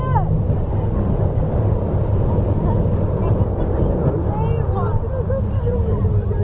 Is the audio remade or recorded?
recorded